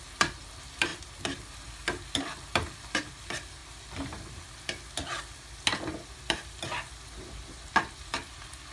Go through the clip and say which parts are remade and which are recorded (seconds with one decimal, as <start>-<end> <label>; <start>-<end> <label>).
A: 0.0-8.7 recorded